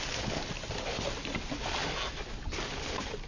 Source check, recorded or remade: recorded